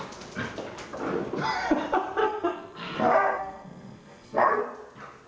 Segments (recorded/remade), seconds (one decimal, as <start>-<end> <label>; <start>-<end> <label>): 0.0-2.2 recorded; 2.2-4.6 remade; 4.6-5.3 recorded